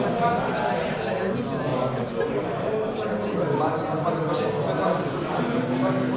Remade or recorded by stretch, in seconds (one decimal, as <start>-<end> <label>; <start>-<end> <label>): 0.0-6.2 recorded